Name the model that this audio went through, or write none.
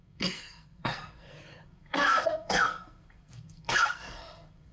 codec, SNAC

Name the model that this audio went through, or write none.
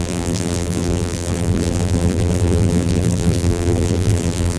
vocoder, BigVGAN v2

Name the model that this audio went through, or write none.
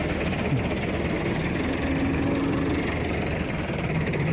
none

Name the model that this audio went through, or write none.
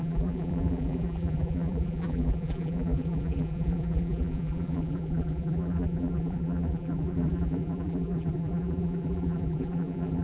vocoder, BigVGAN v2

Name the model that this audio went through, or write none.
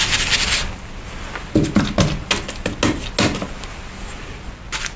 none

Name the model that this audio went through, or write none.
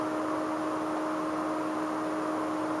none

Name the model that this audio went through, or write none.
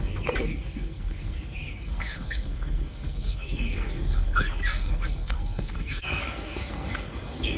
codec, SNAC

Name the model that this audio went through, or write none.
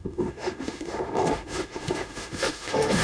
autoencoder, DAC-VAE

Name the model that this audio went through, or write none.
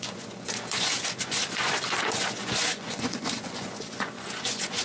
vocoder, Vocos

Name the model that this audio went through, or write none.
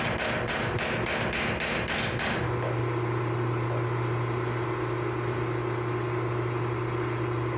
none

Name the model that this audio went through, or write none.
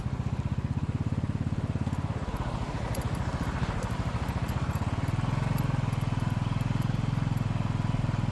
none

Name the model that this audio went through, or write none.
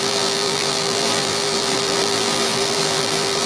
vocoder, BigVGAN v2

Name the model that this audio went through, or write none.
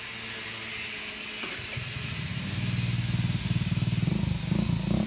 none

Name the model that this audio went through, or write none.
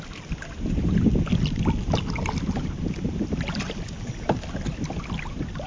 none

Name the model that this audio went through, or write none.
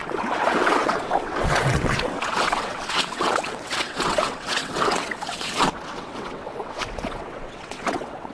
vocoder, WaveNeXt